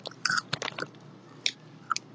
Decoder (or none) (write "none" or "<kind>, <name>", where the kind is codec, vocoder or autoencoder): none